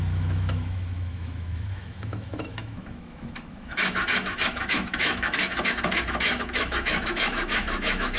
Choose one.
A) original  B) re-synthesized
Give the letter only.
B